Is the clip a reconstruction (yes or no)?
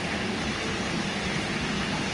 no